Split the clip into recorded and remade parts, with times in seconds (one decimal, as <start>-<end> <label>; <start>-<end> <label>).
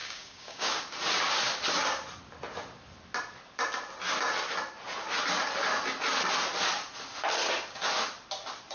0.0-0.8 remade; 0.8-8.7 recorded